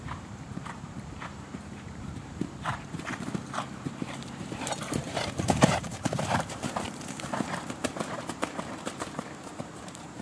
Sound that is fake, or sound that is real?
fake